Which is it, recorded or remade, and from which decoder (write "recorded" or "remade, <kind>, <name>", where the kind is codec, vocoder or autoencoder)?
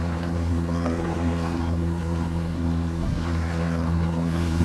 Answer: remade, codec, SNAC